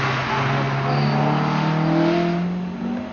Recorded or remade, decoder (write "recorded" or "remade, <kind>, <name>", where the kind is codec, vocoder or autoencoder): recorded